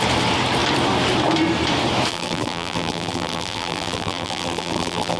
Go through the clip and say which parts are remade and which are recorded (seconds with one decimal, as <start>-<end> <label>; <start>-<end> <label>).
0.0-2.1 recorded; 2.1-5.2 remade